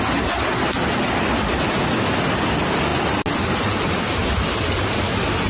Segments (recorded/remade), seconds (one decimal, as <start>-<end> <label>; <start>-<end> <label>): 0.0-4.2 recorded; 4.2-5.0 remade; 5.0-5.5 recorded